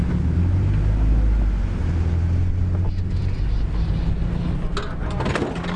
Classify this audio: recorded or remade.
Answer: recorded